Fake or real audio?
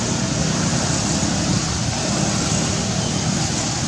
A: real